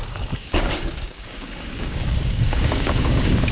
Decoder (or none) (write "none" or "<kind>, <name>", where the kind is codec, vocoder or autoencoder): codec, DAC